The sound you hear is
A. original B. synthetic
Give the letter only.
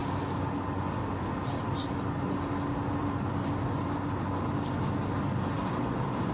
A